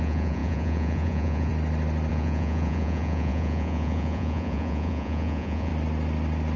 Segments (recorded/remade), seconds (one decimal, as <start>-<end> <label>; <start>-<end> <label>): 0.0-1.5 remade; 1.5-2.1 recorded; 2.1-5.7 remade; 5.7-6.6 recorded